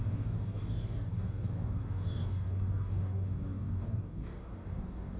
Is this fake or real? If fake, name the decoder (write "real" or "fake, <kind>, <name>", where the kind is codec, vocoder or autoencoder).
fake, codec, DAC